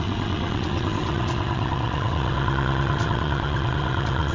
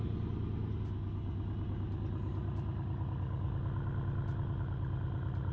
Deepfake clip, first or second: first